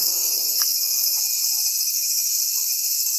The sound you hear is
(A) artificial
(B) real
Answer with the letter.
A